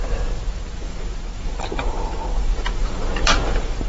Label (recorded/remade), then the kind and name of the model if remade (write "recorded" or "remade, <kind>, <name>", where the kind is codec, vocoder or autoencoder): remade, vocoder, BigVGAN v2